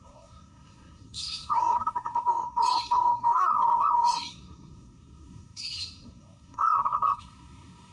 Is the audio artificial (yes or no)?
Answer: yes